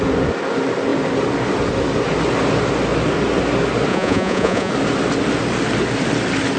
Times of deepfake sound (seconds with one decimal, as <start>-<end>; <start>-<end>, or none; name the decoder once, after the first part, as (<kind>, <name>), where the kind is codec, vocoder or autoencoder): 3.9-4.7 (vocoder, Vocos)